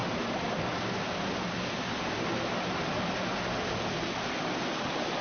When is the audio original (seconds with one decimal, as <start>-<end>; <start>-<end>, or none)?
0.0-5.2